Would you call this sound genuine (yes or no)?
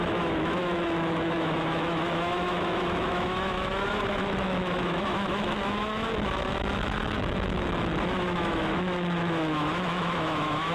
no